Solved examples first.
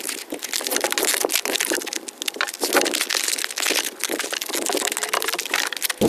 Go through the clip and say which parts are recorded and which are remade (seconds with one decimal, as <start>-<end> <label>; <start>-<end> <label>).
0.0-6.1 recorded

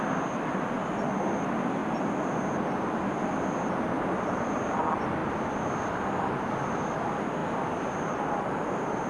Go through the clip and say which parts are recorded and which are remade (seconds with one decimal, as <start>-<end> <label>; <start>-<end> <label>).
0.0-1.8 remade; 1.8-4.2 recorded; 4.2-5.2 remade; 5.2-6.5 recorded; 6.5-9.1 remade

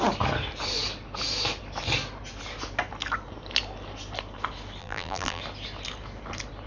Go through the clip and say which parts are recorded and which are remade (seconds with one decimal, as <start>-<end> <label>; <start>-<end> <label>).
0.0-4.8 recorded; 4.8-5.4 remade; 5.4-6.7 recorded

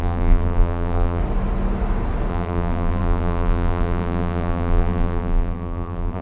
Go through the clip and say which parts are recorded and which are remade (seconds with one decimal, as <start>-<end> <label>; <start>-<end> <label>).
0.0-1.2 remade; 1.2-2.3 recorded; 2.3-6.2 remade